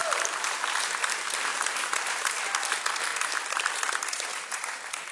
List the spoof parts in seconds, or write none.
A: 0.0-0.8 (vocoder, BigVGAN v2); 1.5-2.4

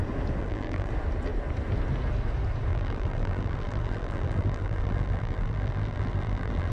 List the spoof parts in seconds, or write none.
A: 0.4-0.9 (vocoder, BigVGAN v2); 2.7-6.7

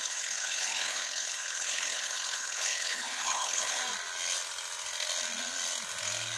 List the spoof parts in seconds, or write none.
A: 0.0-3.8 (codec, HILCodec)

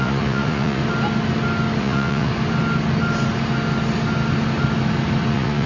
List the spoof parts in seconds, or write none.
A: 0.0-0.8 (vocoder, Vocos); 1.8-2.3; 5.3-5.7